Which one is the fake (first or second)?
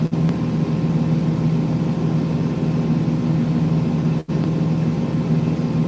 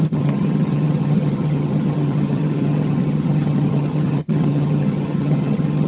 second